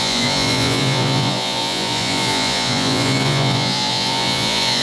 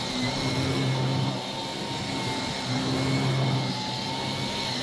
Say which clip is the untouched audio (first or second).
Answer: second